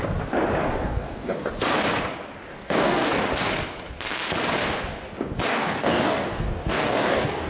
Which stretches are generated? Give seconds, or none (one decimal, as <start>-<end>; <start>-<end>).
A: 0.6-1.5; 2.5-3.2; 5.5-7.5